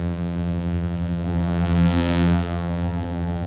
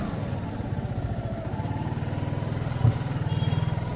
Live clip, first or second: second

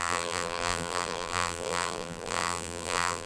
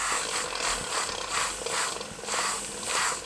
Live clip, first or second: second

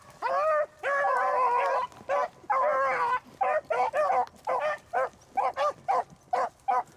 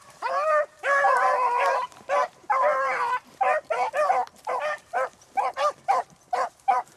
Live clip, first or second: first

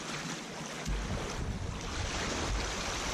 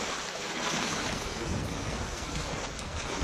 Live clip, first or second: first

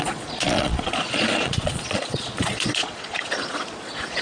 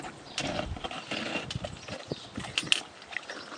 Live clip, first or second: second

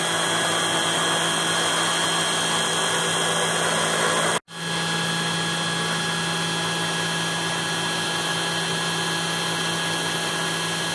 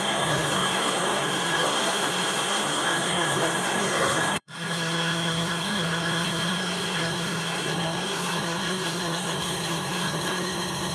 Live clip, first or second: first